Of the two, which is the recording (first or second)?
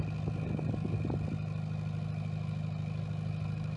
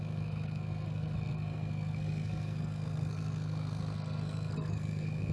first